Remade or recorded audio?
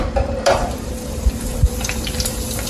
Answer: remade